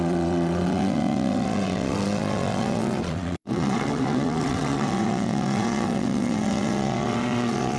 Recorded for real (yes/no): no